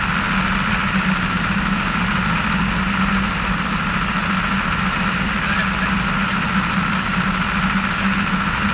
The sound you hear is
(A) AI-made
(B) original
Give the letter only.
B